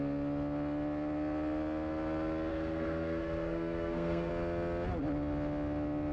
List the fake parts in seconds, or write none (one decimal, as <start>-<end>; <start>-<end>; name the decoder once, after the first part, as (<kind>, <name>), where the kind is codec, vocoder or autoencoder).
2.5-4.3 (codec, SNAC)